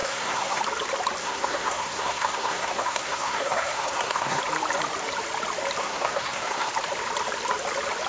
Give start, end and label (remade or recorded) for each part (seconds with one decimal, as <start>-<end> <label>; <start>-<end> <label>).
0.0-0.6 remade; 0.6-1.2 recorded; 1.2-4.4 remade; 4.4-5.8 recorded; 5.8-6.7 remade; 6.7-8.1 recorded